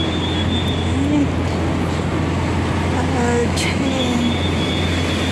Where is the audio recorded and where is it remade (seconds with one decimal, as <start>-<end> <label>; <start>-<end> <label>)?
0.0-3.4 recorded; 3.4-4.0 remade; 4.0-5.3 recorded